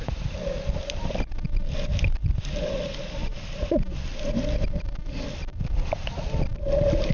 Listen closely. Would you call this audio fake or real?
real